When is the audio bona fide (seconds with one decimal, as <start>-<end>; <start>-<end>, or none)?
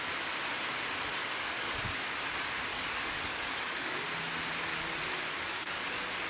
0.0-1.2; 1.7-2.7; 4.0-4.7; 5.8-6.3